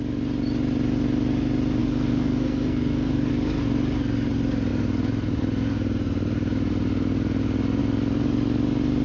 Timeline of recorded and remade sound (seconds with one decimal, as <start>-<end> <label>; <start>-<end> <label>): 0.0-1.8 recorded; 1.8-3.3 remade; 3.3-9.0 recorded